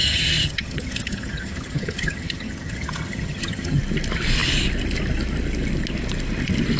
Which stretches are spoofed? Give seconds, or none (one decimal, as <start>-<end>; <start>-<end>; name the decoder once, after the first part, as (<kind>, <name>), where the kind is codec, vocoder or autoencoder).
0.0-3.8 (vocoder, HiFi-GAN)